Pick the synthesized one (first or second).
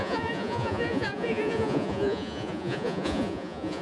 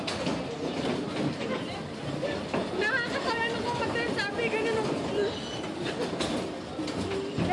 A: first